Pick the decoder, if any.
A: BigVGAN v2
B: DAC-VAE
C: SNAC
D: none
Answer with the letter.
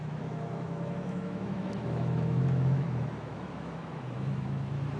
B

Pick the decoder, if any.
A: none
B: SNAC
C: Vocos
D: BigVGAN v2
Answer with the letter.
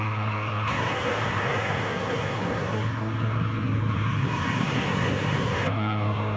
B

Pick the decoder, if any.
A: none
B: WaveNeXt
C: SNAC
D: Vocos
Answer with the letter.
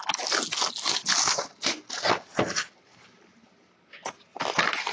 A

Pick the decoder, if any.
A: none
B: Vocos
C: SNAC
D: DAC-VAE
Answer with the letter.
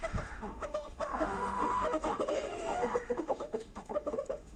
D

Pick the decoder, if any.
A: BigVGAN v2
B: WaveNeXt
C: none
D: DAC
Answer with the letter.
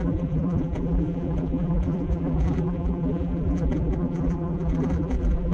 A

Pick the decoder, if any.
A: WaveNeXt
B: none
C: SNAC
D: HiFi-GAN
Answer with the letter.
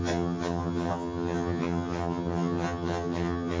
D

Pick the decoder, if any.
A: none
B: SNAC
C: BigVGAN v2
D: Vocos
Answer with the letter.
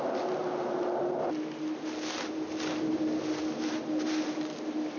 A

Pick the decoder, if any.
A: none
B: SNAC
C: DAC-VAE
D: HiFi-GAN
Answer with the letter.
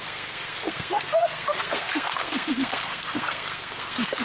B